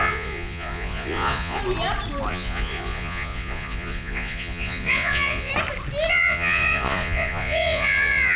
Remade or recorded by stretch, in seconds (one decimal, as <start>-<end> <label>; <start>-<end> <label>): 0.0-1.6 remade; 1.6-2.3 recorded; 2.3-5.5 remade; 5.5-6.1 recorded; 6.1-8.4 remade